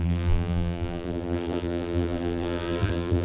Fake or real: fake